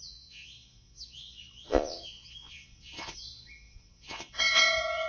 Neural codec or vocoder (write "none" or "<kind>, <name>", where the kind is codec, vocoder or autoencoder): vocoder, Vocos